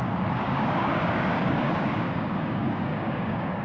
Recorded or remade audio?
remade